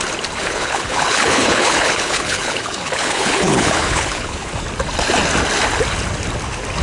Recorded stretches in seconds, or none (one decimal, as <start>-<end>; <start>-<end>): 0.0-0.4; 4.5-6.8